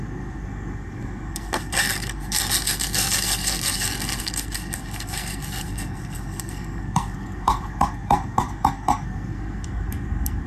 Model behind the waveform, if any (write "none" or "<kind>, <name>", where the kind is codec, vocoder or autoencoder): codec, SNAC